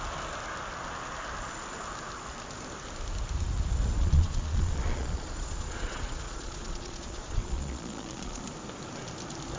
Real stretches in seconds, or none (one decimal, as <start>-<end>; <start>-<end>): 0.0-4.0; 8.4-9.6

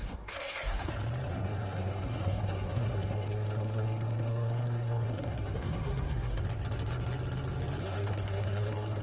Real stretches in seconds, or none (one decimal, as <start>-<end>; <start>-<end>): 0.9-1.3; 6.4-7.8

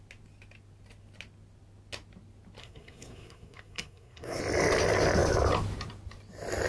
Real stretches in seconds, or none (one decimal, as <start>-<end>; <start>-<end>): 0.0-2.6; 4.4-6.7

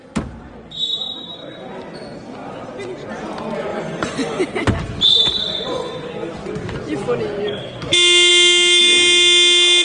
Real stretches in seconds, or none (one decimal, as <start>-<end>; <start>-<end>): 0.0-3.7; 4.4-5.2; 5.9-9.8

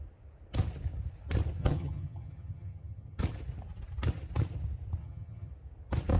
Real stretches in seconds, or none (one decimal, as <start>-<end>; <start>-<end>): 0.0-1.6; 3.2-5.0; 5.5-6.2

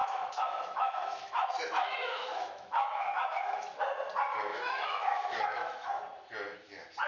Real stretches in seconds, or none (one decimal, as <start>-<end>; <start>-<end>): 3.8-4.5; 6.0-7.1

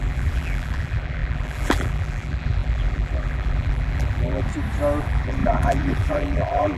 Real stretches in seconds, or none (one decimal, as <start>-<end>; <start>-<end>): 4.5-5.0